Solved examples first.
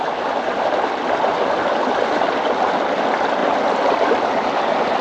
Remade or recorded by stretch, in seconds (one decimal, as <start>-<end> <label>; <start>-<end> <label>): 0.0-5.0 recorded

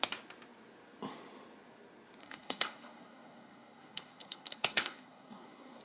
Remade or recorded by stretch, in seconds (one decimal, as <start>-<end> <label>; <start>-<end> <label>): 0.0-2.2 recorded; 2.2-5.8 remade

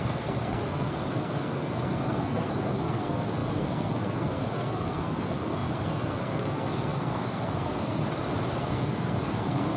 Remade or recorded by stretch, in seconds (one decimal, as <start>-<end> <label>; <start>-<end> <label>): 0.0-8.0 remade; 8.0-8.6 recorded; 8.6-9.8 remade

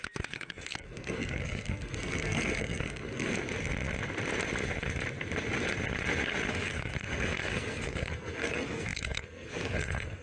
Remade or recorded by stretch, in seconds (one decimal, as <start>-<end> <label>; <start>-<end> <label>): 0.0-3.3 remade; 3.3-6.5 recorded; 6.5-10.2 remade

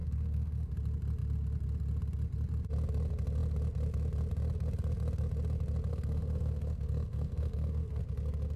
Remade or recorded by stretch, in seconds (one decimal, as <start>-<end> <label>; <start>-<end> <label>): 0.0-0.7 remade; 0.7-5.9 recorded; 5.9-8.0 remade; 8.0-8.6 recorded